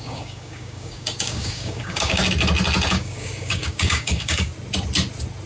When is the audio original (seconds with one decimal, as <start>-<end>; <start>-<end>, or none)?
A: 2.2-2.9; 4.5-5.5